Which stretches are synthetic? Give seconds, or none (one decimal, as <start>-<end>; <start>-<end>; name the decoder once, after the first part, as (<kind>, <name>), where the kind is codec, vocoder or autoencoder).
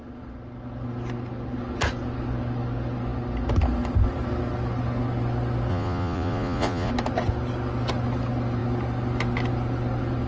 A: 5.7-6.9 (vocoder, Vocos)